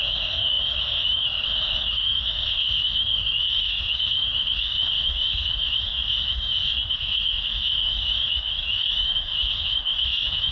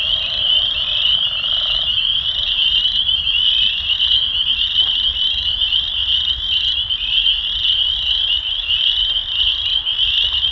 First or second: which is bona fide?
second